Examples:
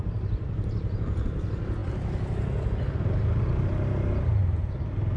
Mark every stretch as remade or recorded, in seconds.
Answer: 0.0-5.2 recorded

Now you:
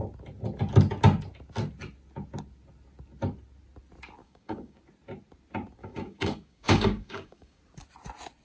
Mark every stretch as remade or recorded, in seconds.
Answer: 0.0-4.2 recorded; 4.2-4.8 remade; 4.8-5.8 recorded; 5.8-7.6 remade; 7.6-8.4 recorded

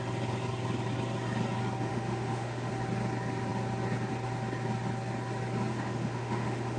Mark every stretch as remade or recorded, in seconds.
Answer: 0.0-1.9 recorded; 1.9-2.7 remade; 2.7-5.7 recorded; 5.7-6.8 remade

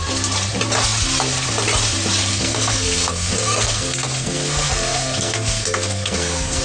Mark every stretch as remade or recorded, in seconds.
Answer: 0.0-2.3 recorded; 2.3-6.6 remade

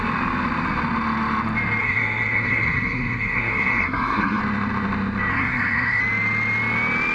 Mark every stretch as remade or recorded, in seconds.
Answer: 0.0-1.8 recorded; 1.8-4.4 remade; 4.4-5.3 recorded; 5.3-6.0 remade; 6.0-7.1 recorded

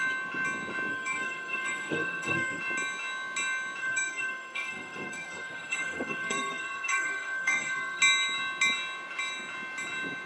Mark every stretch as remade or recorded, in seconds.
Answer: 0.0-0.9 recorded; 0.9-2.6 remade; 2.6-3.8 recorded; 3.8-8.0 remade; 8.0-10.3 recorded

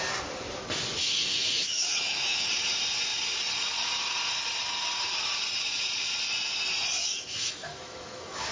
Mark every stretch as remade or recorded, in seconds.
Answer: 0.0-1.0 recorded; 1.0-2.5 remade; 2.5-7.0 recorded; 7.0-8.5 remade

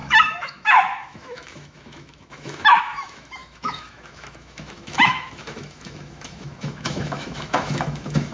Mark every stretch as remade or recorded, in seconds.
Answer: 0.0-8.3 remade